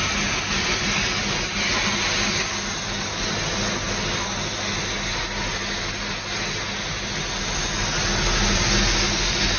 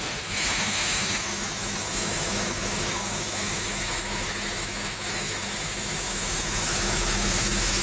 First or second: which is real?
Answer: first